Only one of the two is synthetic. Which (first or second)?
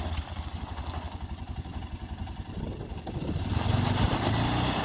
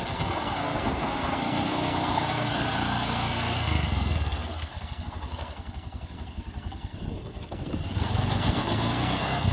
second